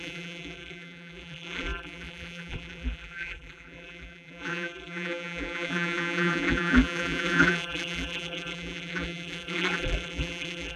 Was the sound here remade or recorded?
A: remade